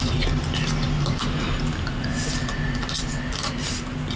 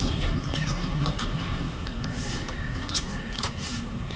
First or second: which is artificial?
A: second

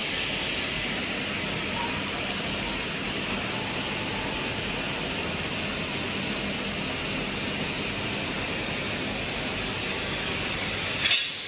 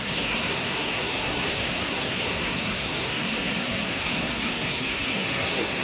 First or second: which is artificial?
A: second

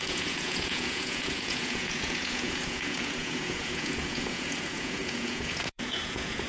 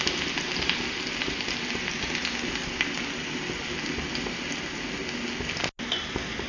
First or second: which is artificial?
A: first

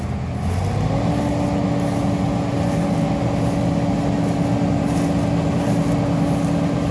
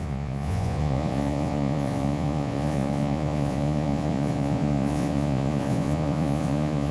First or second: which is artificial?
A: second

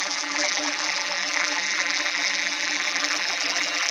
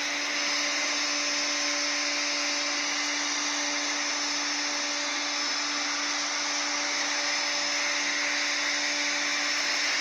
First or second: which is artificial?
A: first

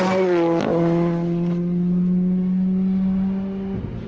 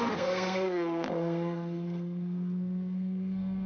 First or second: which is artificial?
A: second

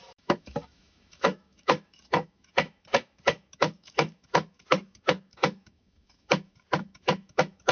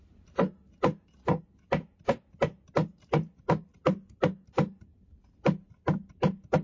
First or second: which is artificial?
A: first